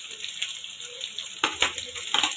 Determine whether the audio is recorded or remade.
recorded